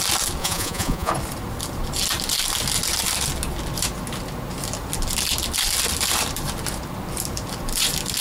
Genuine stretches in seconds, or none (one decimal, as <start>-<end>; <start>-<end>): 0.0-0.4; 1.1-8.2